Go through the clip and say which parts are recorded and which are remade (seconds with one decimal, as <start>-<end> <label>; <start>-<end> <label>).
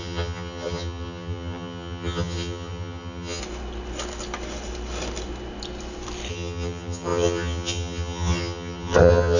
0.0-3.4 remade; 3.4-6.3 recorded; 6.3-9.4 remade